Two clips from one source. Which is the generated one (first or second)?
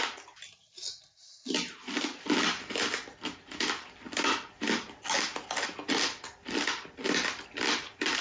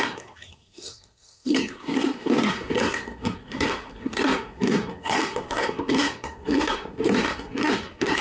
second